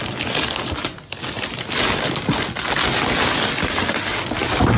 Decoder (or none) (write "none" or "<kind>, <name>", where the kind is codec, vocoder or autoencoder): none